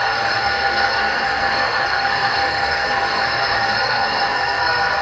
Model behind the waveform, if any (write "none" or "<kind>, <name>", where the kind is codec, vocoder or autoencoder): codec, SNAC